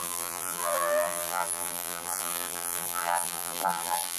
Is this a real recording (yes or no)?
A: no